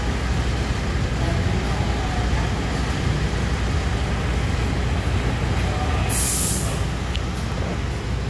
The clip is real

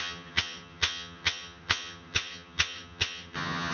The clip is fake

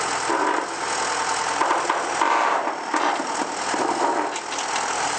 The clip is real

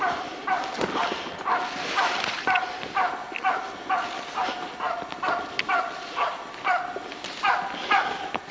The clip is real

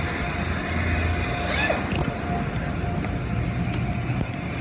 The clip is real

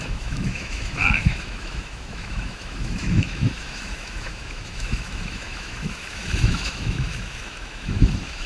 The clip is fake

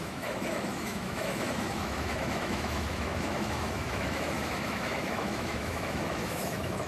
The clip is fake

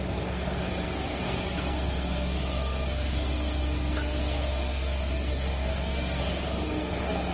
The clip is fake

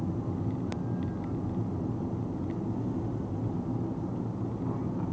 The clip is real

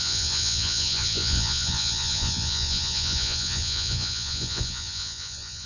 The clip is fake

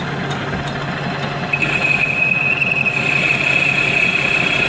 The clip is real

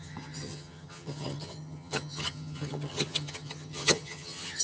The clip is fake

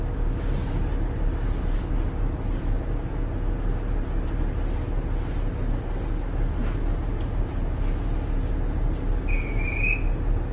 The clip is real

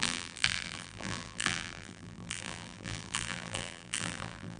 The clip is fake